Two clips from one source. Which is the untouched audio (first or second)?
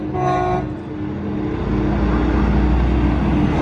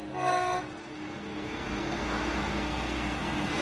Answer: first